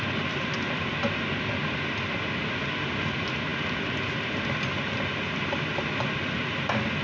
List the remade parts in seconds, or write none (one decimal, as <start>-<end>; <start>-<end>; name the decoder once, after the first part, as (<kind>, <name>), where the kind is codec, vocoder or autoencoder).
none